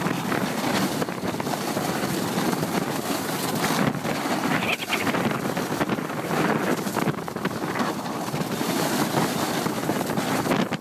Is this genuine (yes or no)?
yes